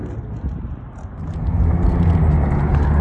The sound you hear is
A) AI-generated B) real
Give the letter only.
B